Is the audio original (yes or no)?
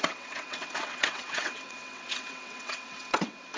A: no